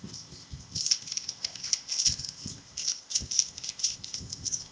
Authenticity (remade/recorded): remade